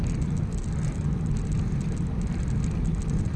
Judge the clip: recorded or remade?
recorded